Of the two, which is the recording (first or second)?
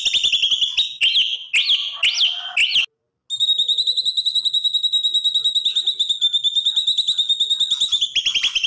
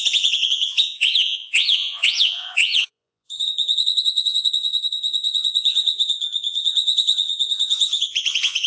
first